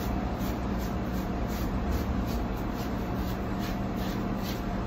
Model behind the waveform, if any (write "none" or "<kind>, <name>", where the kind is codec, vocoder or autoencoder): vocoder, BigVGAN v2